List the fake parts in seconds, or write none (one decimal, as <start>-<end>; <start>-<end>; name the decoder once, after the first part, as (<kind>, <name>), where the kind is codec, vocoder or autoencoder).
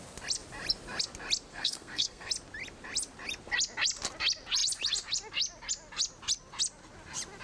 1.5-2.3 (codec, SNAC)